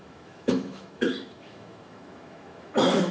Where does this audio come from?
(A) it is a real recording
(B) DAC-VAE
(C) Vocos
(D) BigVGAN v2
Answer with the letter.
B